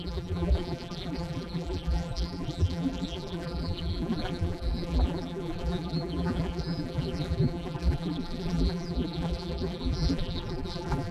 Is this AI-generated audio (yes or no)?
yes